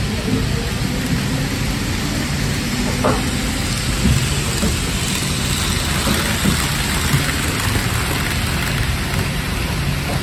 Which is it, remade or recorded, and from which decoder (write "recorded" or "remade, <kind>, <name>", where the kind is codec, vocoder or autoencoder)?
recorded